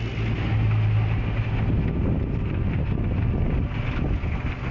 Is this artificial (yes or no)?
no